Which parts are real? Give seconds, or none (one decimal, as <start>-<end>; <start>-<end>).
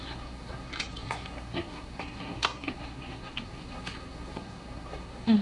none